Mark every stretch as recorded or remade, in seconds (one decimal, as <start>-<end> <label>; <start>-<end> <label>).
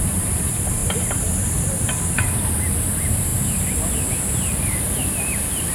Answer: 0.0-0.8 remade; 0.8-1.8 recorded; 1.8-3.3 remade; 3.3-4.1 recorded; 4.1-5.7 remade